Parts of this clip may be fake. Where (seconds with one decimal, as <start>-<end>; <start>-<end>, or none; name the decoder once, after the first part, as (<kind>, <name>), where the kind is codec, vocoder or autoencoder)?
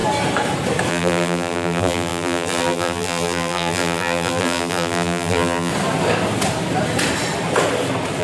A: 0.9-5.7 (vocoder, BigVGAN v2)